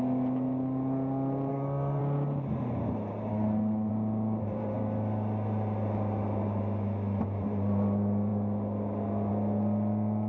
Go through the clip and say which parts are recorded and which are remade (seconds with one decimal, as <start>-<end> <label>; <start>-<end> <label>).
0.0-1.5 recorded; 1.5-2.0 remade; 2.0-3.3 recorded; 3.3-3.9 remade; 3.9-10.3 recorded